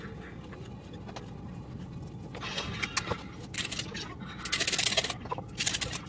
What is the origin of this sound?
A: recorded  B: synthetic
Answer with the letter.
A